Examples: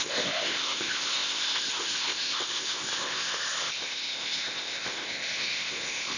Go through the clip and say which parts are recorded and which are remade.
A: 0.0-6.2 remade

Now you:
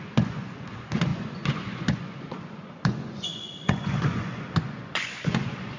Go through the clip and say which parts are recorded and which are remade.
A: 0.0-5.8 remade

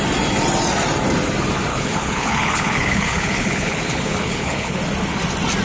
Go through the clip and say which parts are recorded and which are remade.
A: 0.0-1.7 recorded; 1.7-4.8 remade; 4.8-5.6 recorded

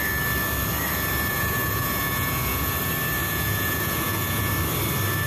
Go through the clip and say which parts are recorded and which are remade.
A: 0.0-1.3 recorded; 1.3-2.8 remade; 2.8-3.2 recorded; 3.2-4.5 remade; 4.5-5.3 recorded

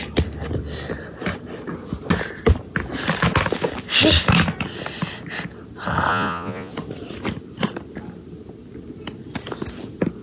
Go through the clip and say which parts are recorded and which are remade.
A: 0.0-6.1 recorded; 6.1-6.7 remade; 6.7-10.2 recorded